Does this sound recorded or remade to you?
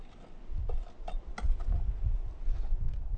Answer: recorded